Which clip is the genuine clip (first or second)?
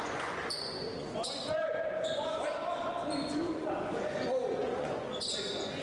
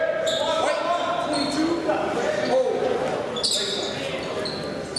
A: second